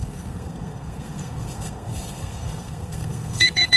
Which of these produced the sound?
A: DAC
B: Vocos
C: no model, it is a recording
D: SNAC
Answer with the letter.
D